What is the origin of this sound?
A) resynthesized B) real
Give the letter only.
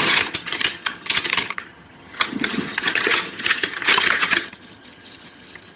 A